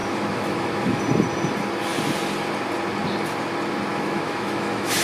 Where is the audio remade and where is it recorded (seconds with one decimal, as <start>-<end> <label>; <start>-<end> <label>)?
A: 0.0-1.0 remade; 1.0-3.9 recorded; 3.9-5.0 remade